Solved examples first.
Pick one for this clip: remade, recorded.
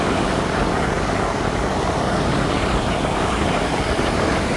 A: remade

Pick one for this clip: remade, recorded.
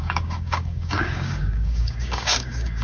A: remade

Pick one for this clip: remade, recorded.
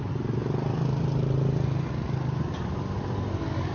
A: recorded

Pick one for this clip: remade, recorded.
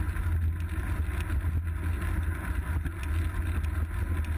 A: recorded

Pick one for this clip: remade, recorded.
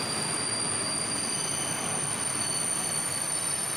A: recorded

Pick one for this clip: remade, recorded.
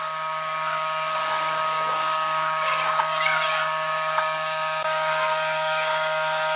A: remade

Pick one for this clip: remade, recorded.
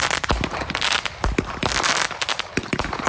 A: recorded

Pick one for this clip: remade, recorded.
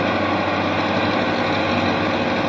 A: recorded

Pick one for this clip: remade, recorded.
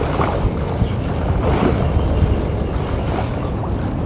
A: recorded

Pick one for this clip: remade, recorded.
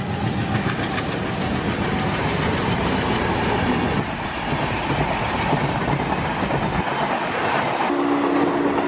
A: recorded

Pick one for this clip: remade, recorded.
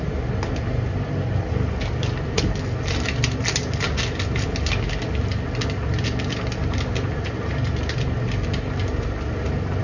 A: recorded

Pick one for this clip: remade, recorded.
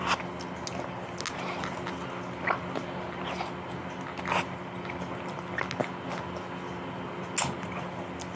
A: recorded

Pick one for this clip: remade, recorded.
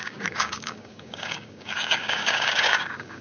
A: remade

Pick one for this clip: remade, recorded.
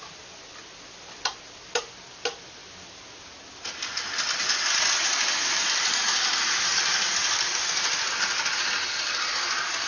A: recorded